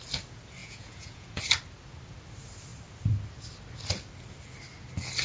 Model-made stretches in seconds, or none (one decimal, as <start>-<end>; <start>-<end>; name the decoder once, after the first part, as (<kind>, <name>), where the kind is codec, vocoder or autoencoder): 0.6-1.4 (vocoder, Vocos)